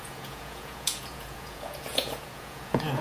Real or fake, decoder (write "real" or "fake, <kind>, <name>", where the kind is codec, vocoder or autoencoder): fake, vocoder, Vocos